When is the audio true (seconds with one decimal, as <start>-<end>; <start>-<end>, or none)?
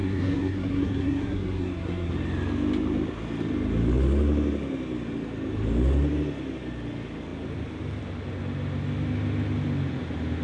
2.1-10.4